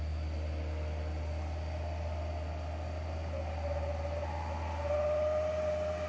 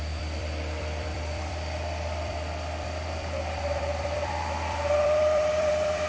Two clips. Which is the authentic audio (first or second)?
first